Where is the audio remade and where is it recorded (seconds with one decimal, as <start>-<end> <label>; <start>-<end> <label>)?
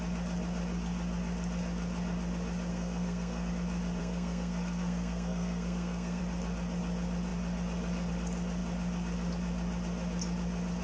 0.0-2.7 recorded; 2.7-3.5 remade; 3.5-4.0 recorded; 4.0-6.2 remade; 6.2-10.8 recorded